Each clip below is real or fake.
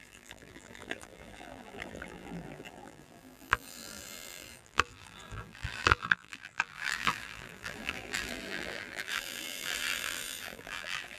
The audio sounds fake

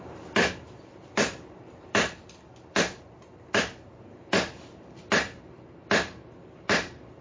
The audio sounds fake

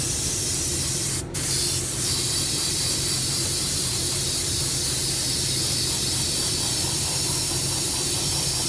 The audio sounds fake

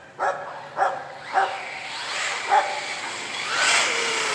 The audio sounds real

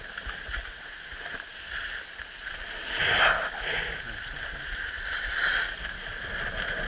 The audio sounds real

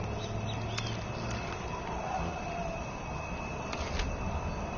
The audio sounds real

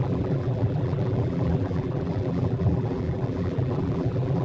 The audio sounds fake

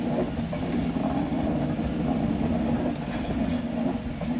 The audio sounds real